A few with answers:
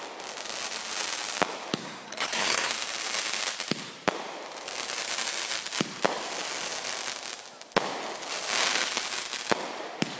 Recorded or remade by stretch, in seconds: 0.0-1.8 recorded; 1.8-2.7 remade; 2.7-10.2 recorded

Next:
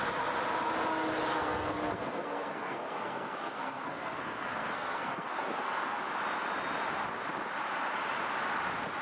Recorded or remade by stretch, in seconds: 0.0-1.3 recorded; 1.3-6.0 remade; 6.0-9.0 recorded